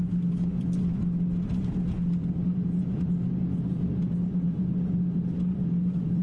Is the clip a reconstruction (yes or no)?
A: no